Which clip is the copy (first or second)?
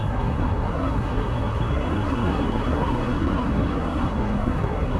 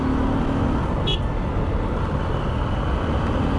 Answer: first